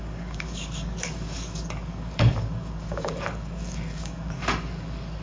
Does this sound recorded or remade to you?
remade